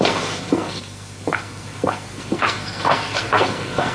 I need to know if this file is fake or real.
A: fake